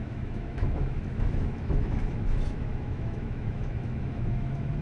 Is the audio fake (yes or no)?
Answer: yes